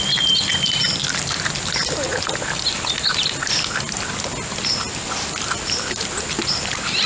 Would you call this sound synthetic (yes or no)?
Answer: no